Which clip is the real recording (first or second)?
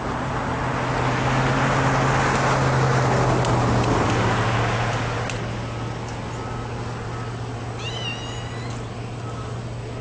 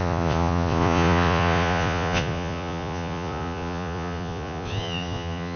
first